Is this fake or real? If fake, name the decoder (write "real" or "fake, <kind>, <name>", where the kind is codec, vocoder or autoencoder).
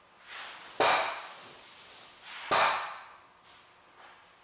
real